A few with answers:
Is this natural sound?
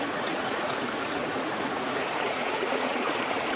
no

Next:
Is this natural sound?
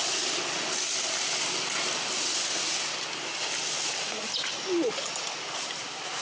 yes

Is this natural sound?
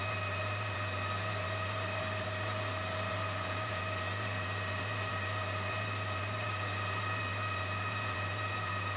no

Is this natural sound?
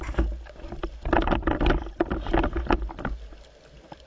yes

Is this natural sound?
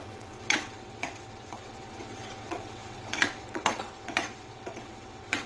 no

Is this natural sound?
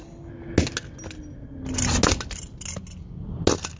yes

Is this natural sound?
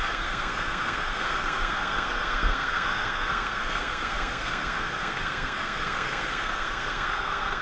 no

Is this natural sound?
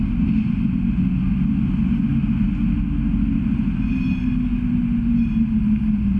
yes